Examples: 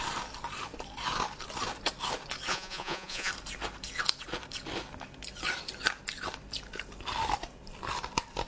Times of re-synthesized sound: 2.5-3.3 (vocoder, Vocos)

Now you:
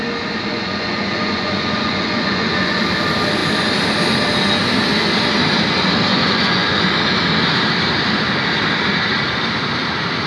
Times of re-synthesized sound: 0.5-2.8 (vocoder, Vocos); 6.1-6.8

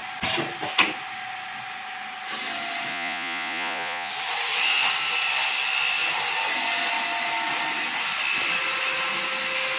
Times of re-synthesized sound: 2.9-4.1 (vocoder, Vocos)

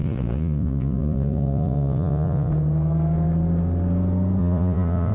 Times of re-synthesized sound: 0.0-2.5 (vocoder, Vocos); 4.4-5.1

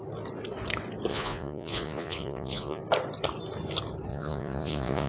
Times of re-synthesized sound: 1.1-2.8 (vocoder, Vocos); 4.1-5.1

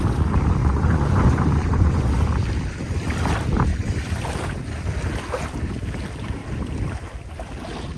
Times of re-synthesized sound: 0.6-2.1 (vocoder, Vocos)

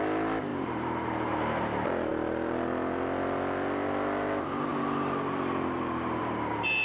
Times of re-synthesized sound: none